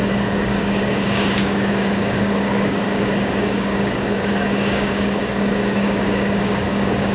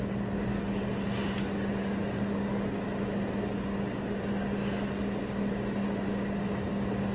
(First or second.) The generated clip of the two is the first